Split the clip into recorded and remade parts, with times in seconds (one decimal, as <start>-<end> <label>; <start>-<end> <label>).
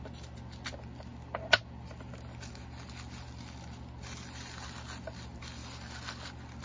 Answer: 0.0-6.6 recorded